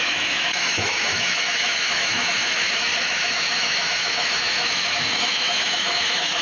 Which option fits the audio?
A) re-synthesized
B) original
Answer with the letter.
A